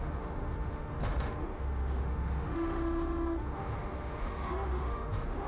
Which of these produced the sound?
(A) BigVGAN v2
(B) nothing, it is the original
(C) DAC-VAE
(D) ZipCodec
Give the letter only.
C